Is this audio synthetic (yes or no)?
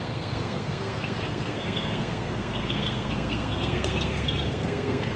yes